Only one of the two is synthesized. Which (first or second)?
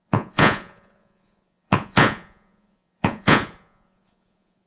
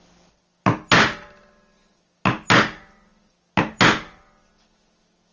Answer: first